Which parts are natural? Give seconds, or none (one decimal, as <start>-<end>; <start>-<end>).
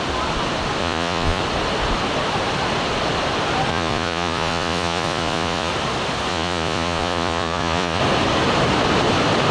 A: 0.0-0.8; 1.4-3.7; 5.7-6.3; 8.0-9.5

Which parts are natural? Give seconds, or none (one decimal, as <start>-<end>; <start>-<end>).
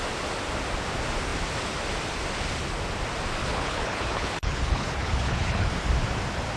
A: 0.0-3.4; 5.7-6.6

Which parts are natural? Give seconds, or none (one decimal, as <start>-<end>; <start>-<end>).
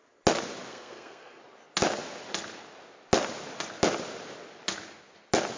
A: 0.0-0.7; 1.4-5.6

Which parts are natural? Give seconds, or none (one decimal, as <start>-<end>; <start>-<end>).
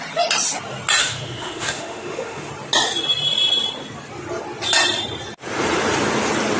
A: 0.0-1.0; 2.5-6.6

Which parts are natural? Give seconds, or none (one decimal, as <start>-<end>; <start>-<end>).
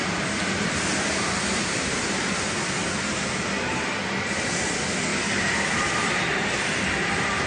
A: 2.5-5.1